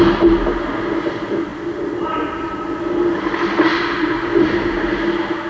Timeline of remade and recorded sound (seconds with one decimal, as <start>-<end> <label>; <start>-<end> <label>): 0.0-5.5 recorded

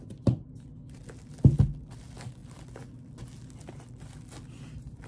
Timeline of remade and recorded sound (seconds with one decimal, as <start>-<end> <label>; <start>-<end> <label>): 0.0-5.1 recorded

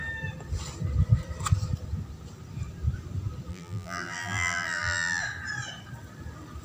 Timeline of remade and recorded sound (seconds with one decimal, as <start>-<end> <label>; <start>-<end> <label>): 0.0-3.5 recorded; 3.5-5.2 remade; 5.2-6.6 recorded

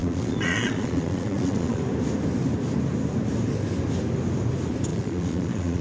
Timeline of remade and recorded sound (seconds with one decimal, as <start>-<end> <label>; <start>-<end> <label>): 0.0-1.8 remade; 1.8-4.9 recorded; 4.9-5.8 remade

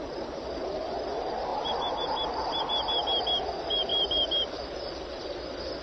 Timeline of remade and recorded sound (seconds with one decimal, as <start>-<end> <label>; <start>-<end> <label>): 0.0-5.8 recorded

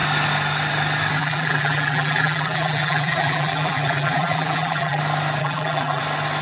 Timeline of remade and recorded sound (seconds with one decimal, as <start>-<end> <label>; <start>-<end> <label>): 0.0-1.2 recorded; 1.2-5.0 remade; 5.0-5.4 recorded; 5.4-6.0 remade; 6.0-6.4 recorded